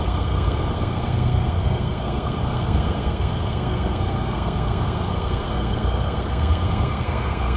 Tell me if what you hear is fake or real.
fake